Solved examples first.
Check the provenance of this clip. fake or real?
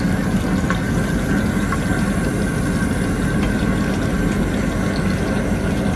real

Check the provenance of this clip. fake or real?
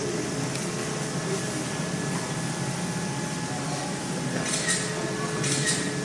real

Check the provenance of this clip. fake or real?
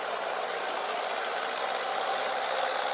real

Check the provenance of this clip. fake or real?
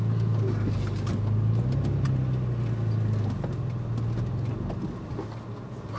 real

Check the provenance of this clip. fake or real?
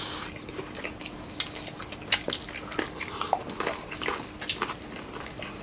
real